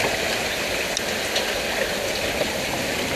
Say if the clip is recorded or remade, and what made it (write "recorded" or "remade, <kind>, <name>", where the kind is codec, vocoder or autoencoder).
recorded